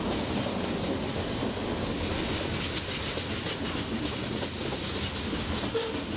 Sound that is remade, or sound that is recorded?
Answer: recorded